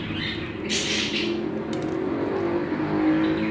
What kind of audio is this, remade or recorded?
recorded